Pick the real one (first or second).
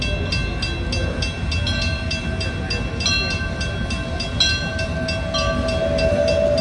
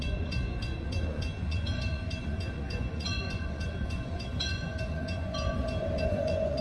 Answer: first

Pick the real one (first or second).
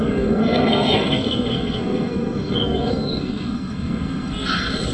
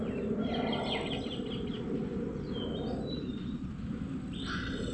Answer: second